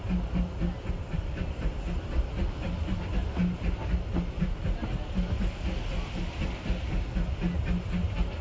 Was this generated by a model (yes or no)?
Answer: no